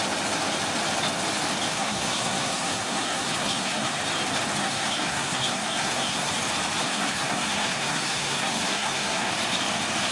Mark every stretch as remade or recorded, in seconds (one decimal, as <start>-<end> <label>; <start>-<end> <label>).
0.0-1.7 recorded; 1.7-4.0 remade; 4.0-4.6 recorded; 4.6-6.3 remade; 6.3-6.8 recorded; 6.8-9.3 remade; 9.3-10.1 recorded